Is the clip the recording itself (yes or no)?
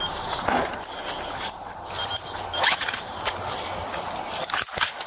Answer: yes